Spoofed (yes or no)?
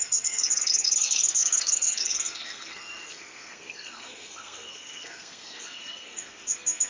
yes